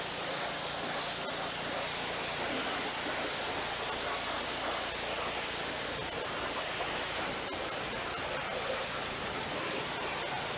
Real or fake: real